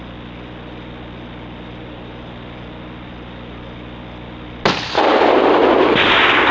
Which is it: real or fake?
real